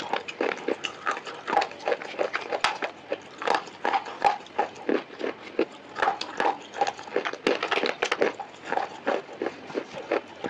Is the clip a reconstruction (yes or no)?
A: no